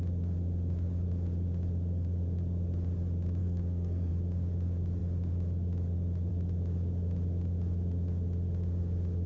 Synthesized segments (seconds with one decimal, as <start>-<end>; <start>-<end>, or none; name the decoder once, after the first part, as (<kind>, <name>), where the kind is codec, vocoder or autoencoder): 3.4-4.1 (codec, SNAC)